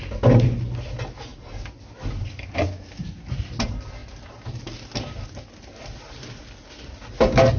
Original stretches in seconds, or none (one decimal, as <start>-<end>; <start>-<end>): 0.0-7.6